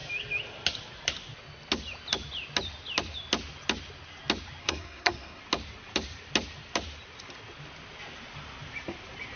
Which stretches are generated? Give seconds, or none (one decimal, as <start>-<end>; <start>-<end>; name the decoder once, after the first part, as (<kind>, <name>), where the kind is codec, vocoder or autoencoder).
4.6-5.4 (codec, SNAC)